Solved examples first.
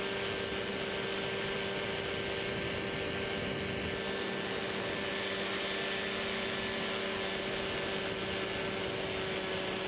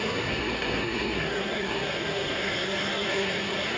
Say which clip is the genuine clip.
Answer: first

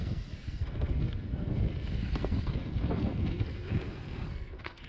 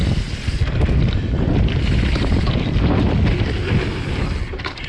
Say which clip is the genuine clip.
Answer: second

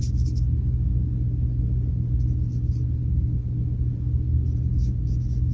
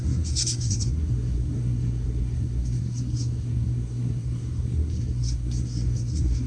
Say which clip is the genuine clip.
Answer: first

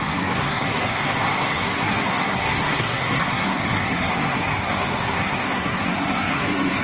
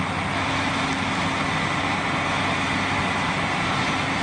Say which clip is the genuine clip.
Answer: second